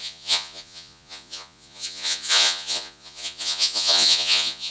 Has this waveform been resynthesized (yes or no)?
yes